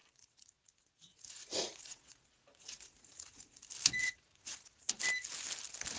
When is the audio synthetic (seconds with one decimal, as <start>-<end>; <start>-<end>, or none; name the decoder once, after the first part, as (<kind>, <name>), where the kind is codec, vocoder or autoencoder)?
0.0-3.6 (vocoder, Vocos); 4.0-4.8